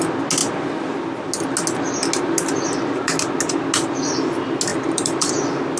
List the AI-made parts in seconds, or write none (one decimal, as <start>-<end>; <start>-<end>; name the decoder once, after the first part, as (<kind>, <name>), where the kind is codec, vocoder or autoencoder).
4.7-5.3 (vocoder, BigVGAN v2)